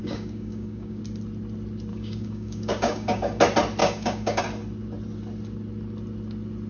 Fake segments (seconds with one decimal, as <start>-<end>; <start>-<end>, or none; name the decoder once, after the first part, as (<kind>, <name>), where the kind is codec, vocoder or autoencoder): 0.0-1.0 (codec, DAC); 1.9-3.4; 3.8-4.4